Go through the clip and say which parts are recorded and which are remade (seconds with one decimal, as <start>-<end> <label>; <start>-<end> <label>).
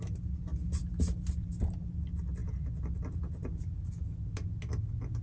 0.0-5.2 recorded